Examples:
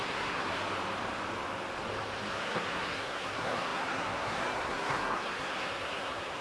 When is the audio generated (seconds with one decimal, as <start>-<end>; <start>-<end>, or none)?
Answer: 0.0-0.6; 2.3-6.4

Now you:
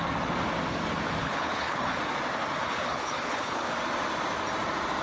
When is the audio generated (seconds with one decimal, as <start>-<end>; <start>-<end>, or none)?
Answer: 1.2-2.0; 2.6-3.7

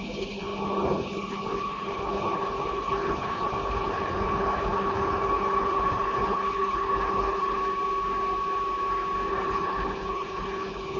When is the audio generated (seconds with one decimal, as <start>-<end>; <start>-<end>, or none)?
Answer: 0.0-7.6; 9.3-11.0

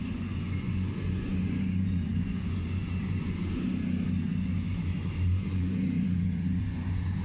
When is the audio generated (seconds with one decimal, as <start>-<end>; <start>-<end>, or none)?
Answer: 0.0-3.4; 4.2-7.2

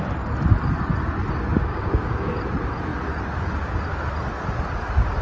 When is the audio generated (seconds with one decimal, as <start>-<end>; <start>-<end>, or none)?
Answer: 1.7-2.3

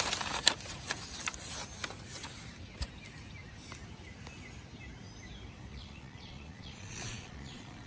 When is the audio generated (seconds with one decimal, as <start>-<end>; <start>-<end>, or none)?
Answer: 5.7-7.9